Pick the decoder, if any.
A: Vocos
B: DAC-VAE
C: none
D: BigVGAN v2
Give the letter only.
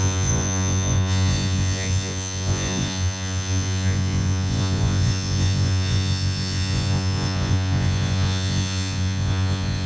A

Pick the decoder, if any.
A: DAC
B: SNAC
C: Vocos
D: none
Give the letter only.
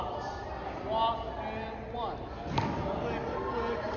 D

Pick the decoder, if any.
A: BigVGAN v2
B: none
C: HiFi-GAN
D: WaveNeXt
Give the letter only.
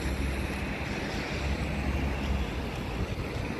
B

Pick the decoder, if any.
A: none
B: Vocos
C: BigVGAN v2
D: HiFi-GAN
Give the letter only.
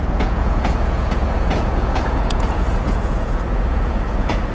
B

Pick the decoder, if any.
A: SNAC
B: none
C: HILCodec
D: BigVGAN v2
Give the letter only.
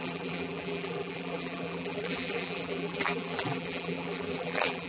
D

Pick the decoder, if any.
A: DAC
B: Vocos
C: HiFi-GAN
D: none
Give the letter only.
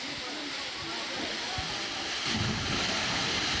D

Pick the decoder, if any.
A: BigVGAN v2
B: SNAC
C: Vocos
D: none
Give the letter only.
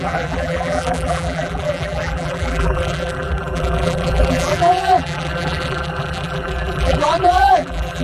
A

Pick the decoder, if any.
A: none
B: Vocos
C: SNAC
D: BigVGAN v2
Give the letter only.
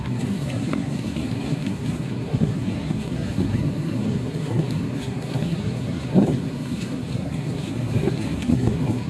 C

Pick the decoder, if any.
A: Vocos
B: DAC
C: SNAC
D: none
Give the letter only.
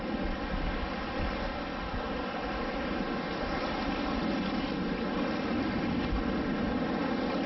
D